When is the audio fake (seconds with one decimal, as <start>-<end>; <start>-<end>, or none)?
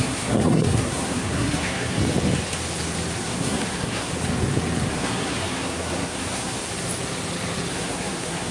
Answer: 0.0-2.0; 3.2-4.1; 4.9-6.6; 7.7-8.5